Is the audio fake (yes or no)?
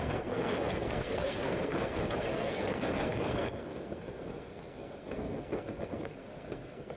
yes